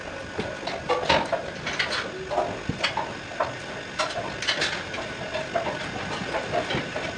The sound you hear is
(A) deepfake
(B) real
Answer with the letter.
B